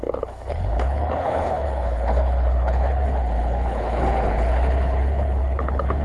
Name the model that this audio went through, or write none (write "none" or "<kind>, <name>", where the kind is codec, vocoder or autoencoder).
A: codec, HILCodec